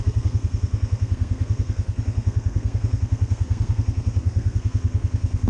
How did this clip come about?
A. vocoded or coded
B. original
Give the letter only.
A